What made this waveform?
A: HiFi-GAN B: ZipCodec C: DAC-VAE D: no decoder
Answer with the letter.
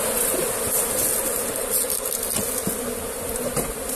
D